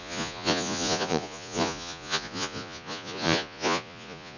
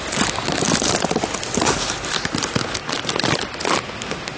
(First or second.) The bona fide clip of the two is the second